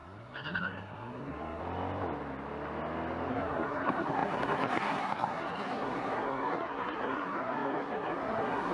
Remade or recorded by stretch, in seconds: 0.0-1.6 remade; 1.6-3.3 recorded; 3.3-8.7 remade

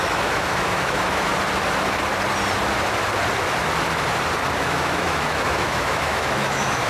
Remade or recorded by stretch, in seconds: 0.0-1.3 remade; 1.3-4.6 recorded; 4.6-6.9 remade

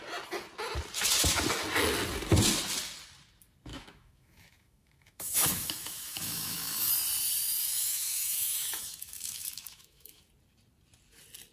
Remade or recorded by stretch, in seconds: 0.0-3.7 recorded; 3.7-6.9 remade; 6.9-7.6 recorded; 7.6-10.3 remade; 10.3-11.5 recorded

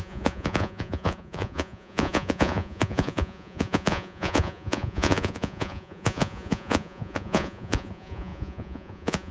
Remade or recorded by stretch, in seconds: 0.0-9.3 remade

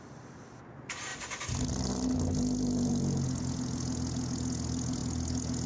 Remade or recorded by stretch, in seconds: 0.0-5.7 recorded

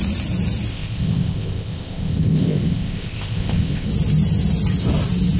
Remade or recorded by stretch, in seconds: 0.0-0.7 recorded; 0.7-3.9 remade; 3.9-5.4 recorded